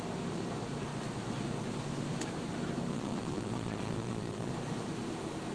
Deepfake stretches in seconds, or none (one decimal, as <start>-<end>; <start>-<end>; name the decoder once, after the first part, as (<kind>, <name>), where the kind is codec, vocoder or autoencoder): 2.9-4.5 (vocoder, Vocos)